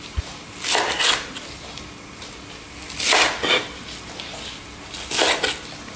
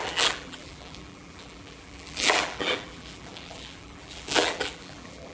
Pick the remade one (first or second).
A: second